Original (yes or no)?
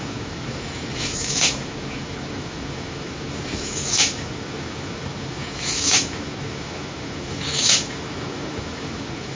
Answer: no